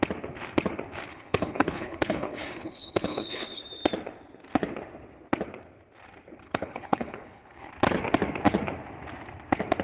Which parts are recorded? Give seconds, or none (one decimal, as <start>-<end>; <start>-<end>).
0.0-1.1; 3.6-6.4; 7.7-9.8